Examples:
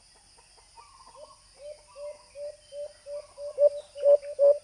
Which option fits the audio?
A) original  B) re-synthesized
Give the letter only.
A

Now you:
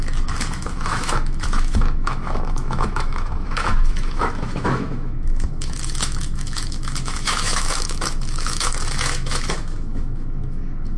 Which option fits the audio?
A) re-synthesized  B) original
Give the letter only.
A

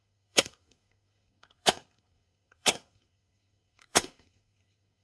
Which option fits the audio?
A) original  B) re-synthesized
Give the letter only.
B